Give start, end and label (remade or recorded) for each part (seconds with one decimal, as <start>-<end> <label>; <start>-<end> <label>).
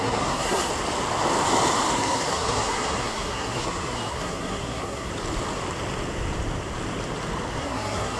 0.0-0.7 remade; 0.7-1.9 recorded; 1.9-5.1 remade; 5.1-7.6 recorded; 7.6-8.2 remade